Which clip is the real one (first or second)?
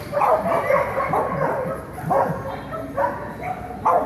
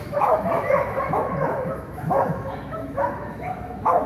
first